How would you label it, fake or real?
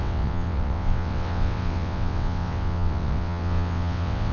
fake